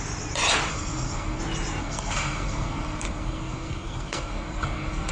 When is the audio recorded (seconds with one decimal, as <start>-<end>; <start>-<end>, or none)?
0.0-0.7; 1.4-1.8

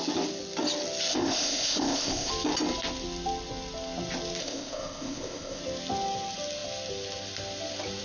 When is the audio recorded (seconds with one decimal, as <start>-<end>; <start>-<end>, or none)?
0.0-1.1; 2.3-4.4; 5.6-8.0

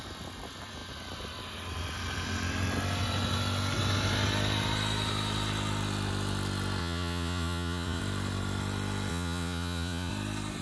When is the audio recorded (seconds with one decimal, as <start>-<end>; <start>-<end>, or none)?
0.0-6.8; 8.0-9.1; 10.1-10.6

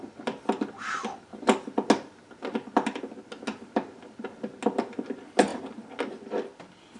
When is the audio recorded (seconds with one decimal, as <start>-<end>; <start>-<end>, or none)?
0.0-7.0

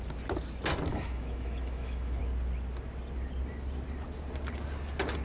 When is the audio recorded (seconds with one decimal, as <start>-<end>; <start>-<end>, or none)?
0.0-0.9; 2.2-5.2

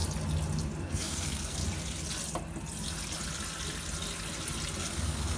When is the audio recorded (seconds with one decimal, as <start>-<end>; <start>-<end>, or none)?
0.0-0.8; 1.6-4.8